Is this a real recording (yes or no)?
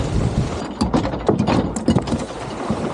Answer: yes